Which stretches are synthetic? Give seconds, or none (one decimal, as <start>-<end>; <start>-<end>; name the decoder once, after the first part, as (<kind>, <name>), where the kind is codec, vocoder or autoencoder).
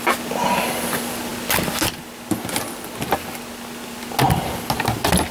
none